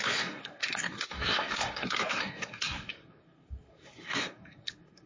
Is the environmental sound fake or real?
fake